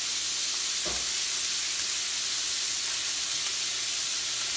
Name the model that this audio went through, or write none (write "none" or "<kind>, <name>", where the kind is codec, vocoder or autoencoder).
none